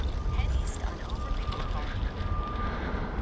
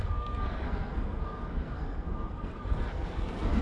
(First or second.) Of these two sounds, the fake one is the second